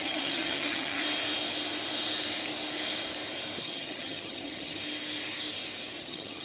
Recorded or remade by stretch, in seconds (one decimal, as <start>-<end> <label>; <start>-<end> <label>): 0.0-1.0 remade; 1.0-3.6 recorded; 3.6-4.8 remade; 4.8-6.0 recorded; 6.0-6.4 remade